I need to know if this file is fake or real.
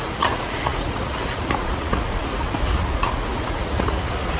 fake